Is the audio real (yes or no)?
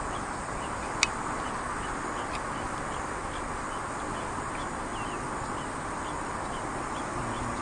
yes